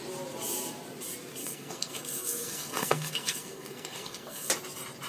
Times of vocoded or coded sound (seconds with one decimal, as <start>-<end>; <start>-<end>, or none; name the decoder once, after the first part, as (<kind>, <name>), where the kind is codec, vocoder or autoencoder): 1.4-4.5 (codec, SNAC)

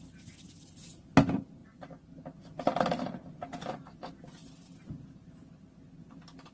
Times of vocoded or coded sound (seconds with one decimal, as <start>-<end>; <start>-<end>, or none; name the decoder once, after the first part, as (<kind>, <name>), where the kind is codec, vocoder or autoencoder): none

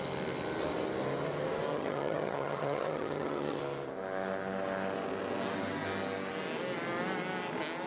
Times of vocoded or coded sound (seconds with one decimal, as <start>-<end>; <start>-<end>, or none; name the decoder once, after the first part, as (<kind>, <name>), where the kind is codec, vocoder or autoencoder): 1.7-3.6 (vocoder, HiFi-GAN)

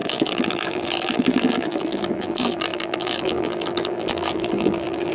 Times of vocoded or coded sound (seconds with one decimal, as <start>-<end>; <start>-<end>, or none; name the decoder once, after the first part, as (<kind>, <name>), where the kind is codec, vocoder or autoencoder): 0.0-5.1 (vocoder, BigVGAN v2)

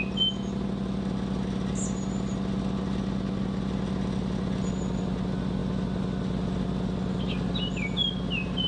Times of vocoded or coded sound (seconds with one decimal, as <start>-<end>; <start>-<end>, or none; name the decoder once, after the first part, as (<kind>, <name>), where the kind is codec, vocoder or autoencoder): none

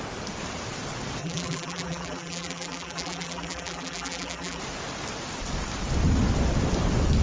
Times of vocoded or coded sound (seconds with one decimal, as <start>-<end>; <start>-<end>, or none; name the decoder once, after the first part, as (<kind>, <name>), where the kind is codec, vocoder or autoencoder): 1.2-4.6 (vocoder, BigVGAN v2)

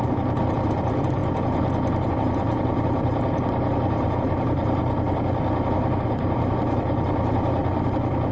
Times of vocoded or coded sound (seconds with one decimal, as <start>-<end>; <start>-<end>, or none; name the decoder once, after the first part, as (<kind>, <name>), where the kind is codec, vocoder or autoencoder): 0.0-1.2 (vocoder, BigVGAN v2); 2.1-4.8; 5.7-7.6

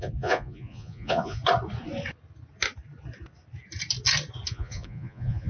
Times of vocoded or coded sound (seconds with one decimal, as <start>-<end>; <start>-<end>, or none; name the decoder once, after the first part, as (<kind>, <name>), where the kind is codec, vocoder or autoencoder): 0.0-1.4 (vocoder, Vocos); 4.5-5.5